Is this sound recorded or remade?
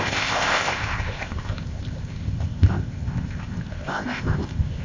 remade